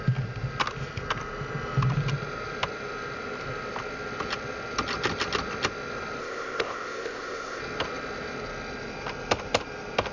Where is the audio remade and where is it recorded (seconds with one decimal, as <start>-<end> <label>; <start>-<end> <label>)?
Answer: 0.0-6.2 recorded; 6.2-7.6 remade; 7.6-10.1 recorded

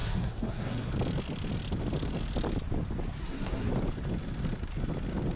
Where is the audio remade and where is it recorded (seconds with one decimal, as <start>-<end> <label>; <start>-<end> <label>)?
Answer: 0.0-0.9 remade; 0.9-3.2 recorded; 3.2-3.7 remade; 3.7-5.4 recorded

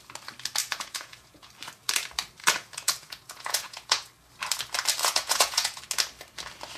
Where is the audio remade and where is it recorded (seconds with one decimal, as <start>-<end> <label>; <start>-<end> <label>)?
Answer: 0.0-0.6 recorded; 0.6-1.5 remade; 1.5-2.4 recorded; 2.4-4.1 remade; 4.1-5.0 recorded; 5.0-5.8 remade; 5.8-6.8 recorded

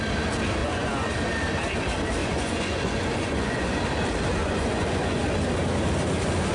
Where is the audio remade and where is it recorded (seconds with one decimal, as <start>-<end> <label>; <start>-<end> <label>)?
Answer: 0.0-0.6 recorded; 0.6-1.1 remade; 1.1-2.2 recorded; 2.2-3.8 remade; 3.8-4.4 recorded; 4.4-5.2 remade; 5.2-6.5 recorded

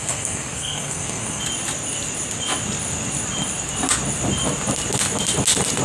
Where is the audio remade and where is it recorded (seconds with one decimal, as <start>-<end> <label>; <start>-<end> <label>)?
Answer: 0.0-1.4 remade; 1.4-5.8 recorded

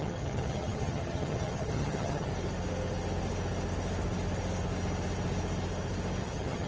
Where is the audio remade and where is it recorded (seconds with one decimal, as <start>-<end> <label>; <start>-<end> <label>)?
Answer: 0.0-2.3 remade; 2.3-6.2 recorded; 6.2-6.7 remade

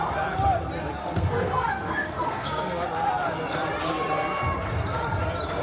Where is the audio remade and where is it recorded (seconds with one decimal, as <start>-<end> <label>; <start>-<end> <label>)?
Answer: 0.0-1.0 recorded; 1.0-2.8 remade; 2.8-5.6 recorded